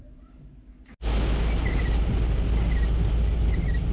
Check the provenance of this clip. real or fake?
real